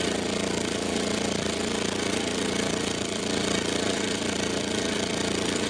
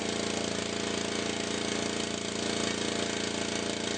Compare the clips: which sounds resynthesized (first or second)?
first